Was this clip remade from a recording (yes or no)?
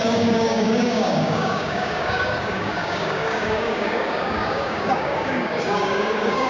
yes